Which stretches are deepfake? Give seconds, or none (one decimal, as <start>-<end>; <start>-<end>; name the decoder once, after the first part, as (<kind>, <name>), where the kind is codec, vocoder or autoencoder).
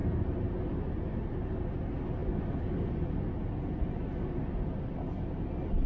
none